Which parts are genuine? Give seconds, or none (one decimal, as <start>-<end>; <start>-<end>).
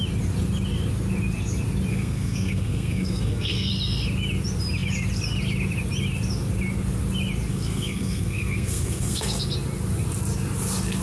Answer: 0.0-1.9; 3.7-7.5; 9.4-11.0